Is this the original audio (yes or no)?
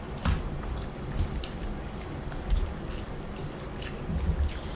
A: yes